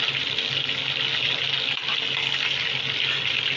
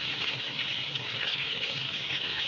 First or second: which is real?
first